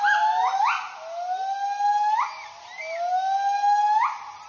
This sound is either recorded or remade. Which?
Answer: recorded